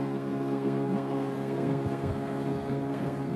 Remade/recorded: remade